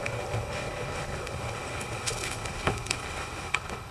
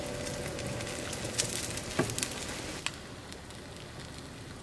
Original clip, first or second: second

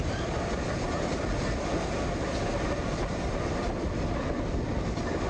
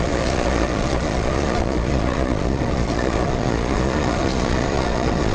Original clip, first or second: first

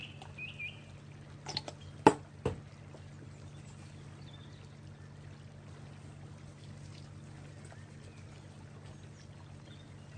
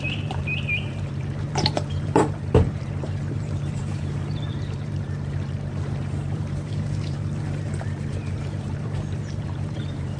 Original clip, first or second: first